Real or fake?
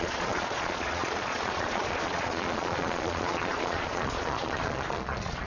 fake